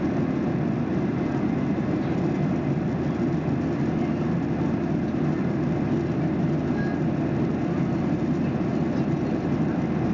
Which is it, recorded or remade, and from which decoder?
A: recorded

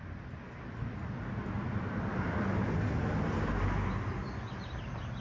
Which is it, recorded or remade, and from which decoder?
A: recorded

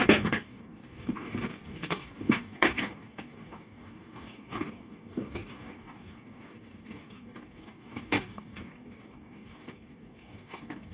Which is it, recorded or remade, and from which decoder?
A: remade, codec, DAC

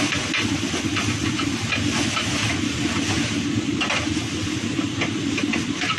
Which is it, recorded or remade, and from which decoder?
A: recorded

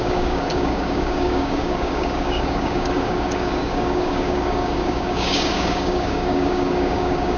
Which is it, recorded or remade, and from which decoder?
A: remade, codec, DAC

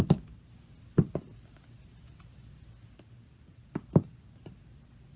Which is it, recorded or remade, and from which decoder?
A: recorded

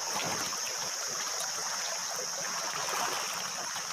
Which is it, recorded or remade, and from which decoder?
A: recorded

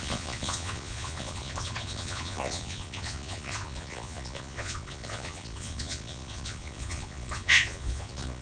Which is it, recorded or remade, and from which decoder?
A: remade, vocoder, Vocos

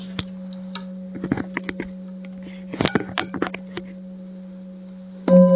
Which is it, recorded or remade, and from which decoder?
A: recorded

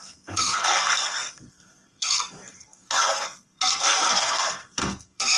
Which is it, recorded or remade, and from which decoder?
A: remade, codec, SNAC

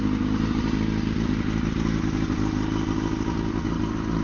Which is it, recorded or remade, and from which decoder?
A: recorded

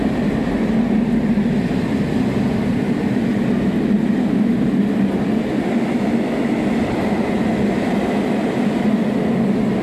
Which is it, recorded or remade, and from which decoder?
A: recorded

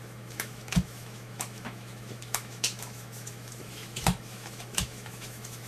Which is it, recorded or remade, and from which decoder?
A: remade, autoencoder, DAC-VAE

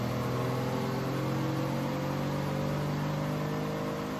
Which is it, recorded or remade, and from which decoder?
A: recorded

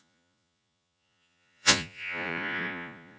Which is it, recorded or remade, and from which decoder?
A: remade, vocoder, Vocos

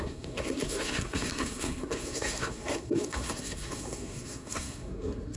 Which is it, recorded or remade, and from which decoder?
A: remade, codec, SNAC